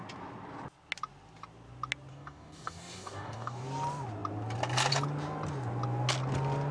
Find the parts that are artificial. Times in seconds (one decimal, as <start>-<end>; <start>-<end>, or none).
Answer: 2.1-3.6